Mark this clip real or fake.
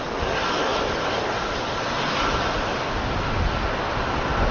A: real